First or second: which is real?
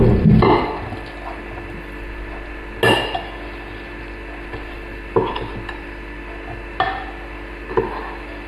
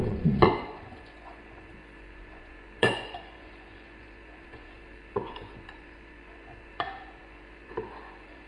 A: first